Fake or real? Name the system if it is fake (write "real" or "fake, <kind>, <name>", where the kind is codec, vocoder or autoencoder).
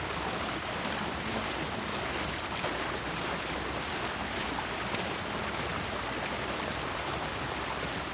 fake, vocoder, BigVGAN v2